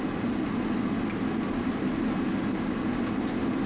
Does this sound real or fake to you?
real